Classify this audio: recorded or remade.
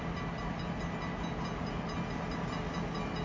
recorded